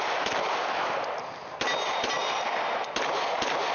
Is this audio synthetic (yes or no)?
no